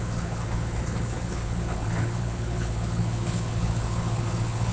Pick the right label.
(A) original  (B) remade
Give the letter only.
B